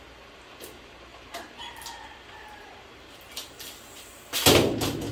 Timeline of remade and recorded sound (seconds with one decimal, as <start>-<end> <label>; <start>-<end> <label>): 0.0-1.1 recorded; 1.1-4.2 remade; 4.2-5.1 recorded